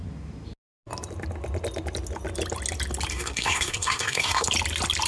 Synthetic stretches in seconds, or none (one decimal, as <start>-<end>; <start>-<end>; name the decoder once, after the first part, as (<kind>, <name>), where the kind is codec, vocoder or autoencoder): 3.1-4.5 (codec, SNAC)